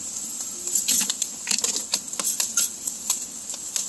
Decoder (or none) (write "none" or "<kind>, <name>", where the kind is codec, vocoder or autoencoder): none